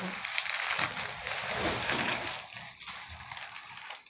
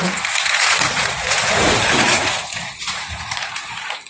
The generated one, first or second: second